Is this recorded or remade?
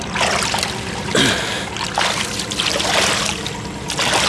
recorded